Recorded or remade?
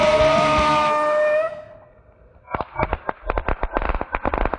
recorded